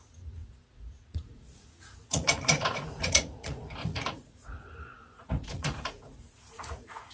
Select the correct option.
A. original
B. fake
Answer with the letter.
B